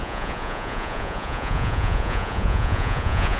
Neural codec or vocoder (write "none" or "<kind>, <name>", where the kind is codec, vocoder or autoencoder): vocoder, Vocos